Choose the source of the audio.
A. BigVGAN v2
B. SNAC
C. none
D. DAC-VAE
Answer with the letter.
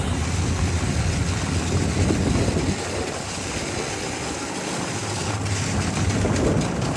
C